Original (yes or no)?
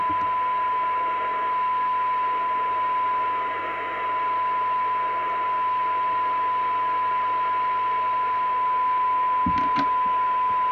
yes